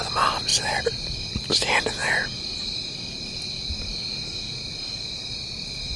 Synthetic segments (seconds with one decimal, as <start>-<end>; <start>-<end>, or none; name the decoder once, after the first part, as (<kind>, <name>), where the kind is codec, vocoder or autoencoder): none